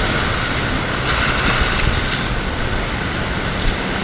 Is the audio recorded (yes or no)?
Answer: yes